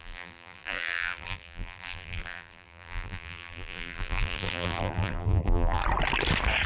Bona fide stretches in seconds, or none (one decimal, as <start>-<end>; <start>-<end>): 5.8-6.7